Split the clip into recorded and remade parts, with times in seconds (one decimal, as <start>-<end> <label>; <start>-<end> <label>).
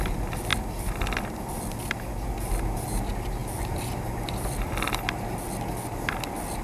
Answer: 0.0-0.5 recorded; 0.5-2.6 remade; 2.6-3.4 recorded; 3.4-4.7 remade; 4.7-6.6 recorded